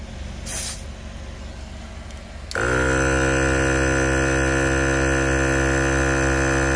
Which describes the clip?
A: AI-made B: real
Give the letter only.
B